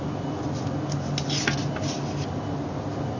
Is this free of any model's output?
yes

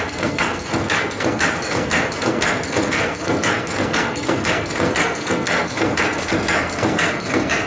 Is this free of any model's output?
no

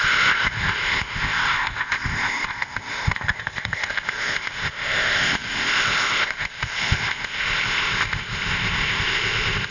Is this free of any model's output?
no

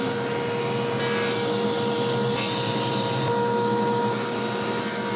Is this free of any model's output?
yes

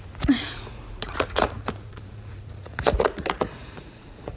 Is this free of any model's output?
no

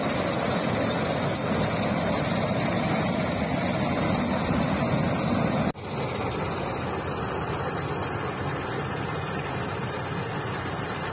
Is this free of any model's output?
yes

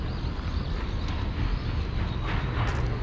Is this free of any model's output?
yes